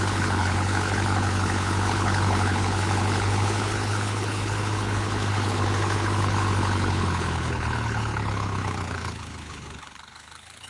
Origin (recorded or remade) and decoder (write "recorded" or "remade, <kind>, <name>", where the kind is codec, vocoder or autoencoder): remade, codec, HILCodec